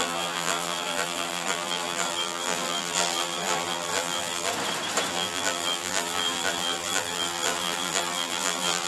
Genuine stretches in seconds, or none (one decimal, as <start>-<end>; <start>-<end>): 4.5-5.1